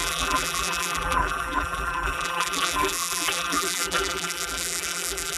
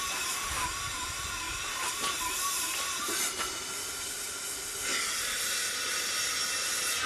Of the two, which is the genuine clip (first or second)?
second